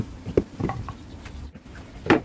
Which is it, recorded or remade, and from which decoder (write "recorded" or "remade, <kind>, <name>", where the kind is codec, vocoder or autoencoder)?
remade, vocoder, BigVGAN v2